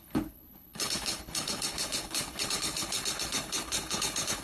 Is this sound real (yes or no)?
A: no